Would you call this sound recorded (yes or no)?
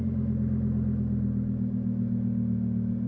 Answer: yes